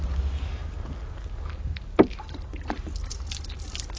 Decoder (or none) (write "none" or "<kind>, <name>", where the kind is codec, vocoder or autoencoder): none